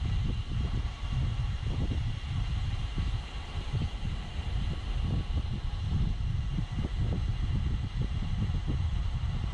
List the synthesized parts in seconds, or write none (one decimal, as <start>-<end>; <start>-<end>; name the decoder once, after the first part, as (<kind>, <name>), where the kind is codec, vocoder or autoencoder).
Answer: none